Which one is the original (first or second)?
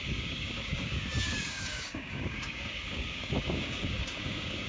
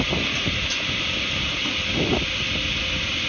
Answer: second